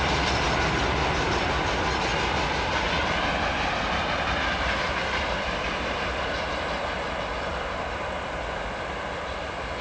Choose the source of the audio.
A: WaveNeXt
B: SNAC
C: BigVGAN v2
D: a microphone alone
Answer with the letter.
D